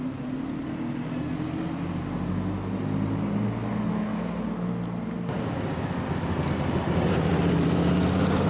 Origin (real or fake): real